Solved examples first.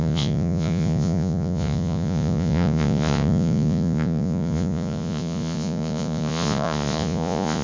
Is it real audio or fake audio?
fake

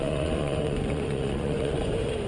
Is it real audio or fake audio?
fake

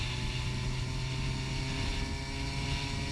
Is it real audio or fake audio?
real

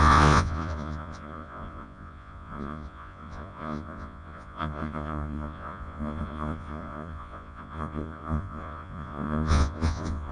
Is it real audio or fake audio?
fake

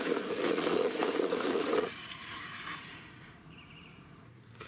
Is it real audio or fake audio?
fake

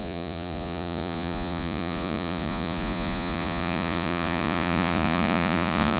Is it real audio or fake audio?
fake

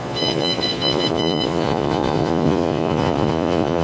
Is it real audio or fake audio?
fake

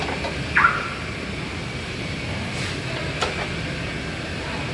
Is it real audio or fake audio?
real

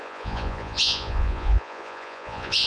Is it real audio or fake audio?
fake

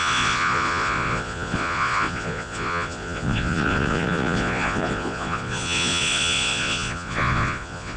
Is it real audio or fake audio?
fake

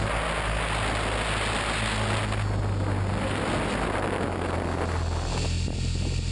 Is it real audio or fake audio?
real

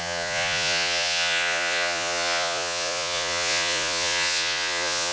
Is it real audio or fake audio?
fake